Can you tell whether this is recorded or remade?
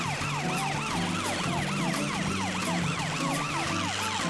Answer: recorded